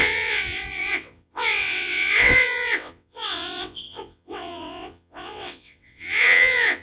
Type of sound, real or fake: fake